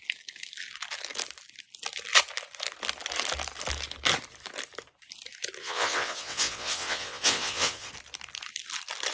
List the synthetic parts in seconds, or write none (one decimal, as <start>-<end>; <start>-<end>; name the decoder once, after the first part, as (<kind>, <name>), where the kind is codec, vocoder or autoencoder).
5.6-7.9 (vocoder, WaveNeXt)